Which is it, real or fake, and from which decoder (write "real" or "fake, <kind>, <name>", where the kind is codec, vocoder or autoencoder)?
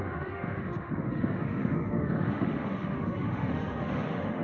fake, autoencoder, DAC-VAE